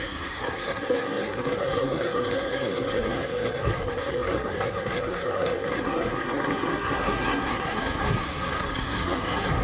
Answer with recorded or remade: remade